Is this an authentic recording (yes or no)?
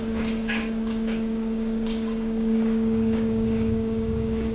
no